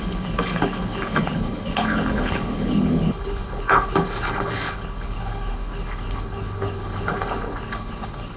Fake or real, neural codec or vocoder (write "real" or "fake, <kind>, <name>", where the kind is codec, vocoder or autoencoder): fake, codec, HILCodec